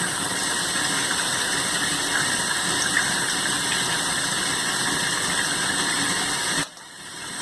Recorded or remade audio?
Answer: recorded